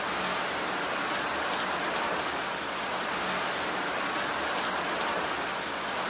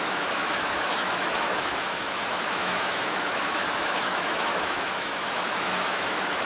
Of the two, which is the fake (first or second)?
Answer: second